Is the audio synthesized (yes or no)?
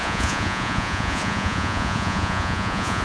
yes